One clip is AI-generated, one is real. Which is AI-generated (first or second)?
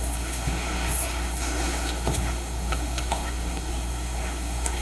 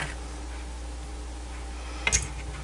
first